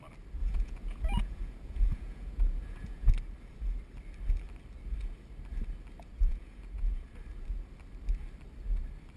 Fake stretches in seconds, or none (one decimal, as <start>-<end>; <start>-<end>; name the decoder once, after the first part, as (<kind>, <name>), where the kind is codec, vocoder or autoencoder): 0.4-3.1 (vocoder, Vocos); 6.1-7.2